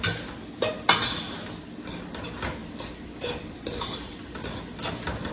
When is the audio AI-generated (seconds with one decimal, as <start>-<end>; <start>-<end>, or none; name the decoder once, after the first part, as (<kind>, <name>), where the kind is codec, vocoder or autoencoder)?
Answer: 2.6-5.3 (vocoder, BigVGAN v2)

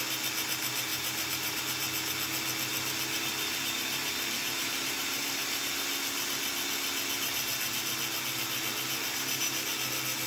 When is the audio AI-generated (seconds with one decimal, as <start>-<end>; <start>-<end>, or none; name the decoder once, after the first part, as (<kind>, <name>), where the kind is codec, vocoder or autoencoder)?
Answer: 0.9-1.6 (vocoder, BigVGAN v2); 4.6-5.6

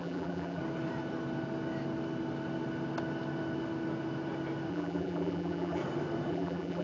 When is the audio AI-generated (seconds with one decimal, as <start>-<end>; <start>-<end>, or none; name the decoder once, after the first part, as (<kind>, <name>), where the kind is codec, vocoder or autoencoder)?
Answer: 0.0-0.6 (vocoder, BigVGAN v2); 4.7-5.8; 6.3-6.8